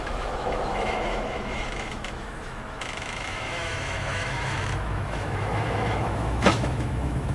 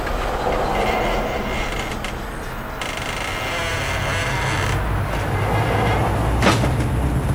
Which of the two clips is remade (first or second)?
first